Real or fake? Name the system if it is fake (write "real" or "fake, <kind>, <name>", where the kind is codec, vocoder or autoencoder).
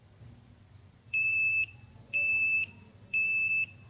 fake, vocoder, BigVGAN v2